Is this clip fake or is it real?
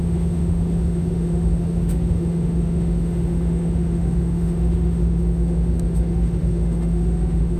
fake